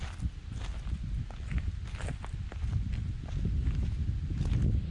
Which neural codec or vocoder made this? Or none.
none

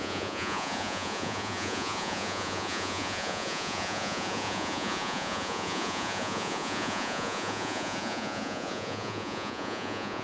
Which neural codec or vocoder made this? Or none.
vocoder, Vocos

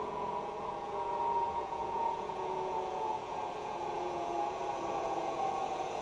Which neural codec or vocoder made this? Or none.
vocoder, Vocos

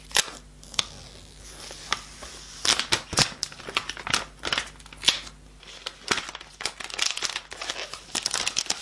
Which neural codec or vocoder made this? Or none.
none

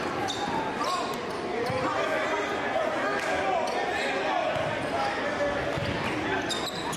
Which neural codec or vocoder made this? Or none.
none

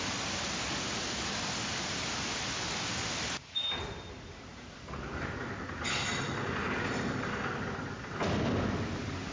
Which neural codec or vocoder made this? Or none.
none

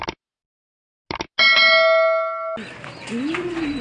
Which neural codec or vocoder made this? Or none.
none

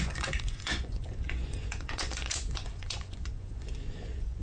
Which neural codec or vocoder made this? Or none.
vocoder, Vocos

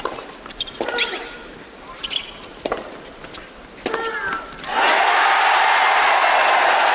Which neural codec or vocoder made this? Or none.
none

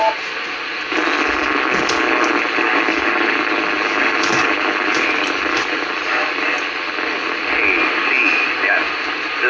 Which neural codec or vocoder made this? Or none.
none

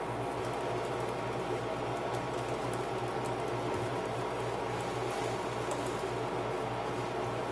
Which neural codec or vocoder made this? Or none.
none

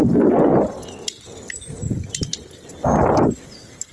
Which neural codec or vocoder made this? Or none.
none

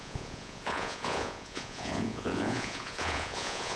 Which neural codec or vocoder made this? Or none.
vocoder, Vocos